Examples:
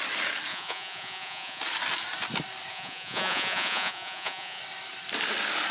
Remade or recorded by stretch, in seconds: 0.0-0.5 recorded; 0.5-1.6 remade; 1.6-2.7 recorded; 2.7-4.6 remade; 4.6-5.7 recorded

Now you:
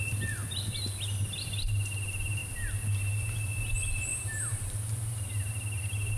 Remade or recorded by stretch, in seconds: 0.0-4.1 recorded; 4.1-5.5 remade; 5.5-6.2 recorded